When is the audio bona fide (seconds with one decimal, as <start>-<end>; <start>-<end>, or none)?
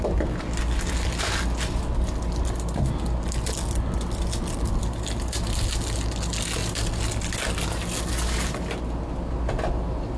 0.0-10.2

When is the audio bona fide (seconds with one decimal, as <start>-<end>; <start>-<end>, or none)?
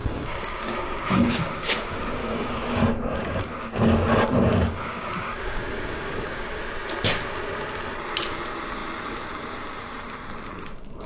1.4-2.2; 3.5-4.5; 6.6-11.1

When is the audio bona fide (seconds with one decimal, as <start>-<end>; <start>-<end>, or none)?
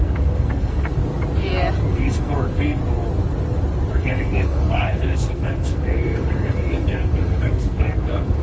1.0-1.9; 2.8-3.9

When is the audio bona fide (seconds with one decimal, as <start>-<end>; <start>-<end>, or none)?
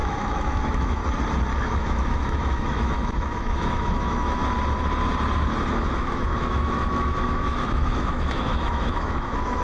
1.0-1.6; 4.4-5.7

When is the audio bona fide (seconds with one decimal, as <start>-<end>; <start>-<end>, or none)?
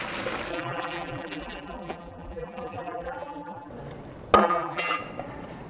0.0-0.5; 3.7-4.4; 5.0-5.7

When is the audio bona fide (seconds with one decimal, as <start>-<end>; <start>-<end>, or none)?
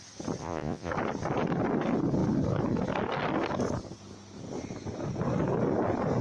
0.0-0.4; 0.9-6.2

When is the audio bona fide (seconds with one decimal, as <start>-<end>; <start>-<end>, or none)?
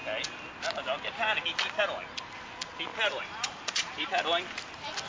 0.0-2.9; 4.1-5.1